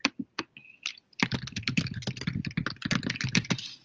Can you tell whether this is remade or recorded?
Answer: recorded